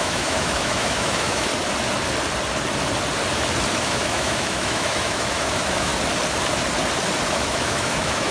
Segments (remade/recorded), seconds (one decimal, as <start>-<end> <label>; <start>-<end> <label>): 0.0-1.5 remade; 1.5-3.7 recorded; 3.7-5.9 remade; 5.9-7.3 recorded; 7.3-8.3 remade